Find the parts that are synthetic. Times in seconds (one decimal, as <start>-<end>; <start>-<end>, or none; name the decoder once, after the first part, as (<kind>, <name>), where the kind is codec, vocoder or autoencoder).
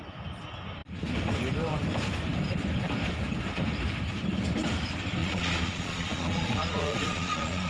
5.2-7.7 (vocoder, Vocos)